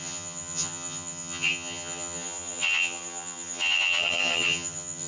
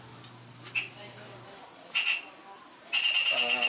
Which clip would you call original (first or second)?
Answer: second